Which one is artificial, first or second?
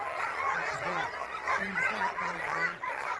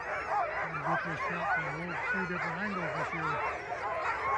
first